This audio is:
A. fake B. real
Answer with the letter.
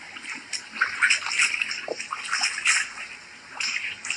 B